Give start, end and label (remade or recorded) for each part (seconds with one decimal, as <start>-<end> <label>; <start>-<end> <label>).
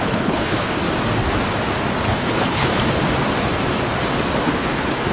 0.0-0.8 remade; 0.8-2.0 recorded; 2.0-2.7 remade; 2.7-4.4 recorded; 4.4-5.1 remade